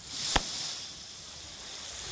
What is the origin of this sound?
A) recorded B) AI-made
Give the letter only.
A